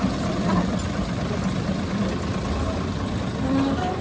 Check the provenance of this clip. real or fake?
real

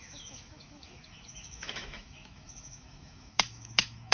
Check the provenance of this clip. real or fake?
fake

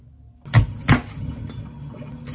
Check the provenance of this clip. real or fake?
real